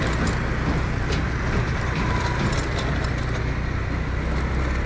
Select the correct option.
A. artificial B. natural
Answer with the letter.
B